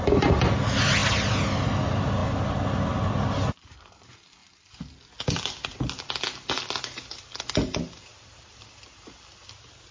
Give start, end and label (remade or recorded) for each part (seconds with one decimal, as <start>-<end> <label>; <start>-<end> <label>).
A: 0.0-9.9 recorded